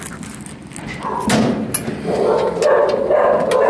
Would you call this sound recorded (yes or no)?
yes